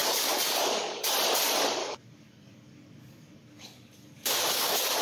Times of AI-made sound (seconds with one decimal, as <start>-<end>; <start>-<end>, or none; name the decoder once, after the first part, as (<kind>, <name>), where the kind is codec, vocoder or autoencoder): 0.0-1.1 (codec, DAC); 1.8-5.0